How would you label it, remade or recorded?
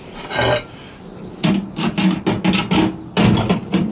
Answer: recorded